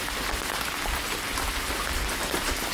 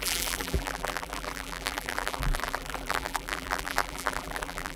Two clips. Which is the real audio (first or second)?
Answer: first